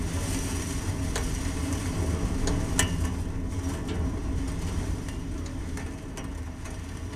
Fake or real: real